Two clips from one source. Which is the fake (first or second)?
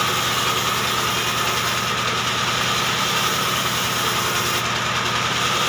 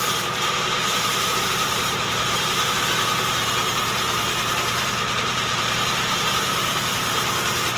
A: second